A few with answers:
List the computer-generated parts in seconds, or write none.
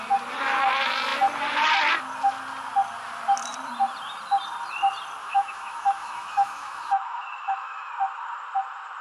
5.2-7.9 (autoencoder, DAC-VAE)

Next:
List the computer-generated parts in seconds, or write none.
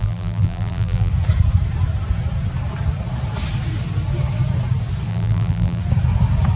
0.0-1.1 (vocoder, BigVGAN v2); 5.1-5.8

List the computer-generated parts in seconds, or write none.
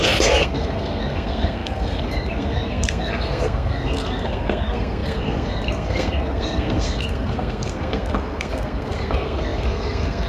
0.0-10.3 (codec, SNAC)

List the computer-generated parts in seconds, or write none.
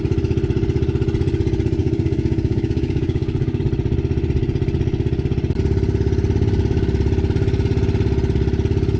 1.8-3.6 (codec, DAC)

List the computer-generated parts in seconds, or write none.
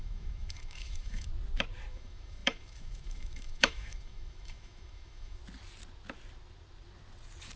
0.0-1.3 (autoencoder, DAC-VAE); 1.9-5.4